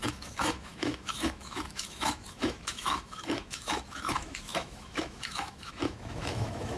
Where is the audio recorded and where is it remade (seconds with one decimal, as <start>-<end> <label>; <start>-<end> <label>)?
0.0-6.8 remade